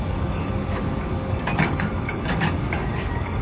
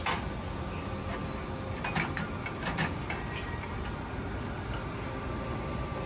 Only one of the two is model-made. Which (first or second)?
first